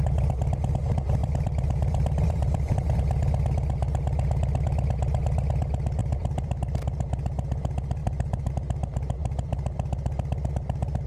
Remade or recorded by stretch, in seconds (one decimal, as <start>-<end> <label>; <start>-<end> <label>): 0.0-1.2 recorded; 1.2-3.0 remade; 3.0-6.0 recorded; 6.0-6.6 remade; 6.6-8.0 recorded; 8.0-8.5 remade; 8.5-11.1 recorded